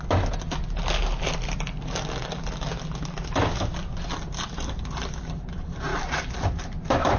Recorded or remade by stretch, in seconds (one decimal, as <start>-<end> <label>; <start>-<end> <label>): 0.0-7.2 recorded